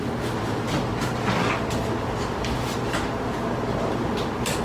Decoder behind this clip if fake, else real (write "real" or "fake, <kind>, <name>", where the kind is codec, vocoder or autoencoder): real